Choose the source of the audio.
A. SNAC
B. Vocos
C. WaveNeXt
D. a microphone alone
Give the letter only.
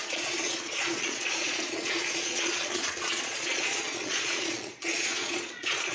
B